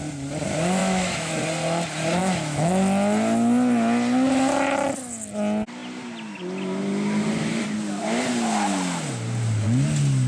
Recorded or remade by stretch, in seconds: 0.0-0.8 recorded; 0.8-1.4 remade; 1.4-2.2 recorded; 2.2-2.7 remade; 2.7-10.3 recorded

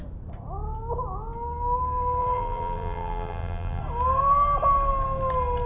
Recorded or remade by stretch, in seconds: 0.0-2.2 recorded; 2.2-3.8 remade; 3.8-5.7 recorded

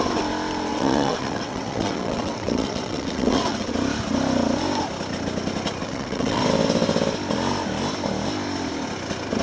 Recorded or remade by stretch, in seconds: 0.0-0.7 recorded; 0.7-3.7 remade; 3.7-5.8 recorded; 5.8-6.4 remade; 6.4-9.4 recorded

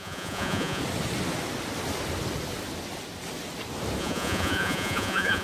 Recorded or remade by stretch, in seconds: 0.0-0.8 remade; 0.8-4.0 recorded; 4.0-5.4 remade